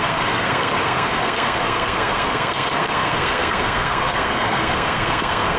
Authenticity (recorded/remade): remade